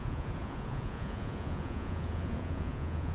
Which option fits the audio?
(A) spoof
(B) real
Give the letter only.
A